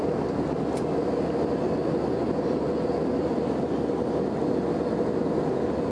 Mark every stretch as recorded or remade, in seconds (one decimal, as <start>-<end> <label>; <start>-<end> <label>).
0.0-5.9 recorded